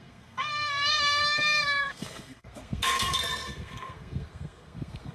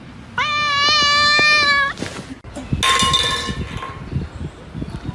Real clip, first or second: second